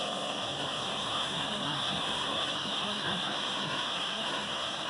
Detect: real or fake fake